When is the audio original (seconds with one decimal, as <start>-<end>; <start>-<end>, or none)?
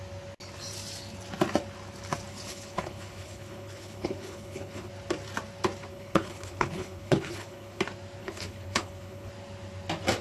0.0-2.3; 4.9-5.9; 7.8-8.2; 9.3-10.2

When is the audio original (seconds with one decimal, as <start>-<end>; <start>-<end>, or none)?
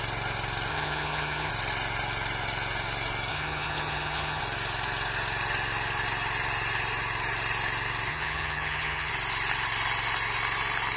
0.0-0.7; 1.5-3.3; 4.4-8.1; 9.1-11.0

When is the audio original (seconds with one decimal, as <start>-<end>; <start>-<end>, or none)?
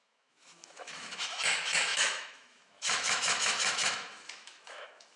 none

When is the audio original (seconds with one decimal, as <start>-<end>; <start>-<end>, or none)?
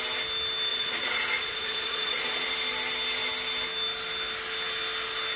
0.0-0.7; 2.4-5.4